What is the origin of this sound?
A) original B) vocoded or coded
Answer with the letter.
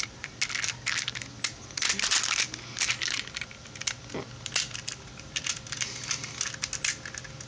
A